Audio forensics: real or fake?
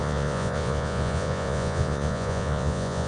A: fake